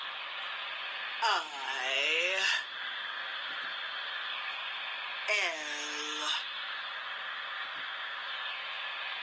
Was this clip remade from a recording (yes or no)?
no